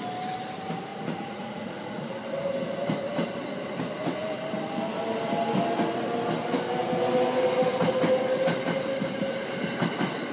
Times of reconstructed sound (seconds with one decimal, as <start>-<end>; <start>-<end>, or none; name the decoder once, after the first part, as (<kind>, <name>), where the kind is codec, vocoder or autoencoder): 0.9-2.1 (vocoder, Vocos)